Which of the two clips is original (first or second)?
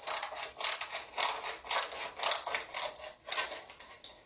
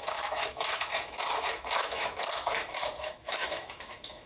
first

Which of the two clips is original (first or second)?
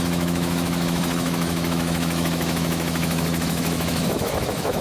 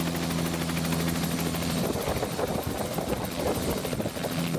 second